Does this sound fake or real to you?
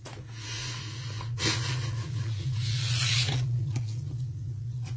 fake